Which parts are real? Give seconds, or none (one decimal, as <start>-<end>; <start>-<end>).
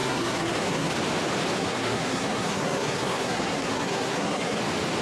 0.9-1.6; 4.6-5.0